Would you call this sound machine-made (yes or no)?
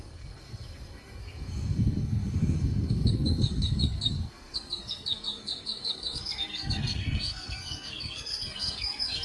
yes